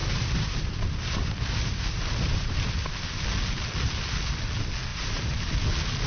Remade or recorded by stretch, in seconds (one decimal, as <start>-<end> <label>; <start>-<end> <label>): 0.0-2.7 remade; 2.7-4.9 recorded; 4.9-5.5 remade; 5.5-6.1 recorded